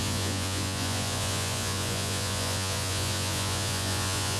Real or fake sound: fake